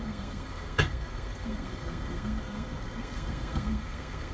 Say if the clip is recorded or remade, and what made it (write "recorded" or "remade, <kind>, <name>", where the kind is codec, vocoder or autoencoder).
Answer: remade, codec, SNAC